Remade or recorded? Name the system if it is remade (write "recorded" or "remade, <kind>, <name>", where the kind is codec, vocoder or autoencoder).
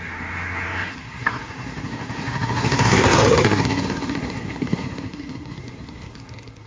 remade, codec, SNAC